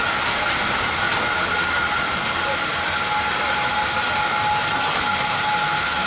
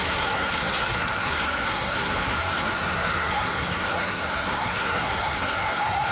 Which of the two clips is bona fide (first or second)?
first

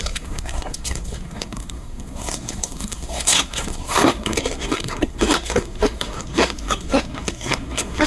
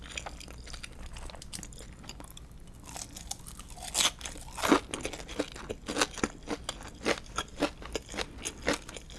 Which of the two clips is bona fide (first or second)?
second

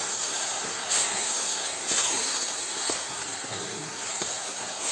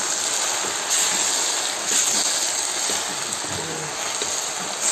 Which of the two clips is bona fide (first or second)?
second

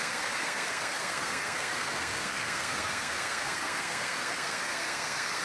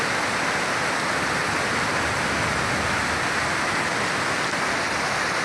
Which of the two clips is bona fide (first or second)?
second